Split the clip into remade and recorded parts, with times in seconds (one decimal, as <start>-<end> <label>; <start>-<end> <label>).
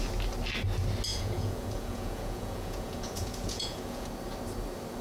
0.0-1.1 recorded; 1.1-4.1 remade; 4.1-5.0 recorded